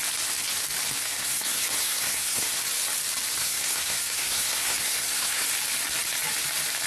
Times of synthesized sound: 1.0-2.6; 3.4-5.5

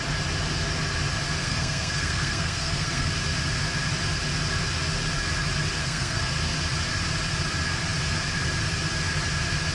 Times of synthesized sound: 1.4-3.1; 5.8-6.3

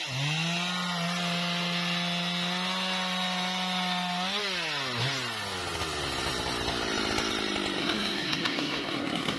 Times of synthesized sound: 7.8-9.4

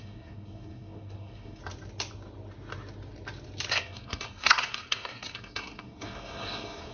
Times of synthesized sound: 0.0-1.6; 3.7-6.9

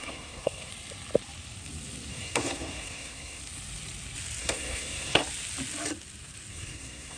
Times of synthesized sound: 0.0-0.7; 2.1-3.4; 4.4-5.2; 6.5-7.2